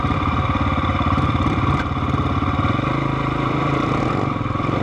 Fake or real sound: fake